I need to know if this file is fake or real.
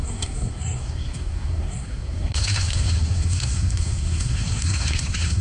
fake